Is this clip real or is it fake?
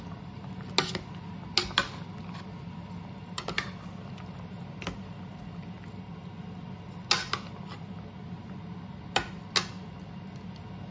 real